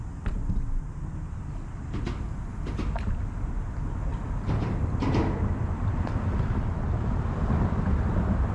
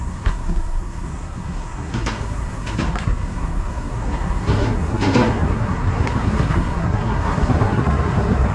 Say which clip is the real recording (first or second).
first